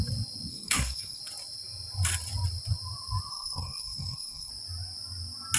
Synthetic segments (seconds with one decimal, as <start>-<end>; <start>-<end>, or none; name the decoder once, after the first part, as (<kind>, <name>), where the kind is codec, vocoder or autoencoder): 0.5-1.2 (codec, SNAC); 3.3-4.5